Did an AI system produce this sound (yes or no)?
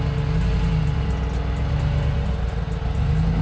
no